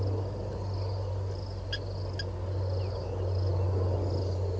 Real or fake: real